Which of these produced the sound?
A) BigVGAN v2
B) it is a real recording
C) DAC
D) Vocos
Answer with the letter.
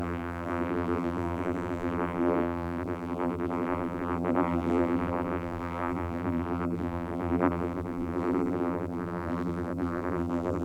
A